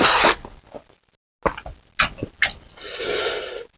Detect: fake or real real